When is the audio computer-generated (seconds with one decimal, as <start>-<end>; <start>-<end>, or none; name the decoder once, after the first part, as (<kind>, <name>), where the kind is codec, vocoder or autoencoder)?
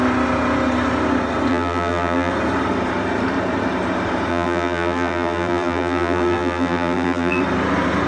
1.5-2.3 (vocoder, BigVGAN v2); 4.3-7.4